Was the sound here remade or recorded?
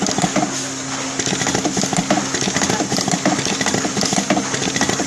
recorded